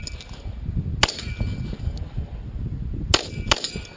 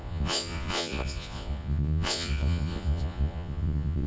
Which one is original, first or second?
first